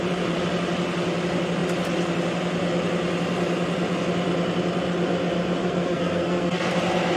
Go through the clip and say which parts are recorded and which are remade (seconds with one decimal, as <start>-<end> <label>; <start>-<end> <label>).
0.0-5.6 recorded; 5.6-6.8 remade; 6.8-7.2 recorded